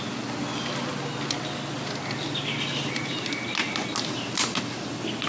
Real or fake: real